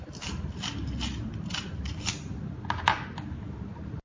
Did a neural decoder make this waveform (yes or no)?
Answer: no